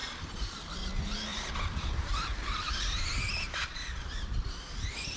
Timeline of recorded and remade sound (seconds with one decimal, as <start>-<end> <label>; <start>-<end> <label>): 0.0-0.7 remade; 0.7-1.3 recorded; 1.3-4.4 remade; 4.4-5.2 recorded